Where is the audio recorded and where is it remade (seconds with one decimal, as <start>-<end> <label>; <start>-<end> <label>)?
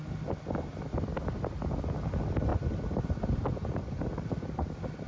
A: 0.0-5.1 recorded